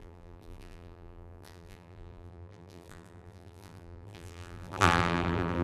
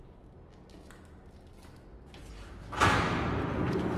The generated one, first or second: first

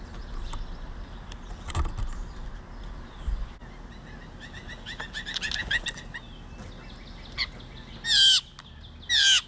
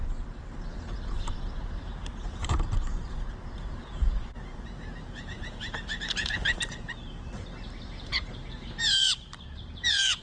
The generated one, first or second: second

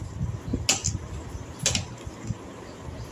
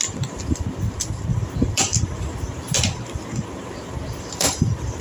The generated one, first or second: second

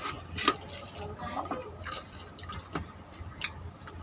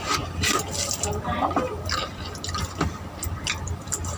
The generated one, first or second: second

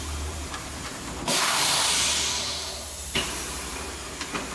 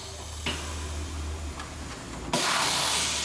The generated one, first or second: first